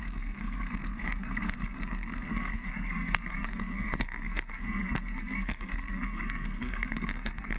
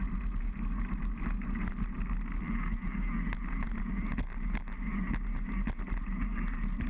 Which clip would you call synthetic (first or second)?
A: first